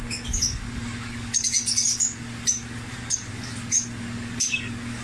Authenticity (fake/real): fake